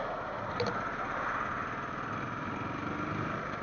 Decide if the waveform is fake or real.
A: real